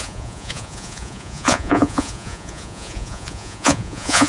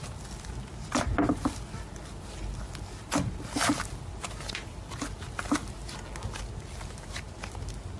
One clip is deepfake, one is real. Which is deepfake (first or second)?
first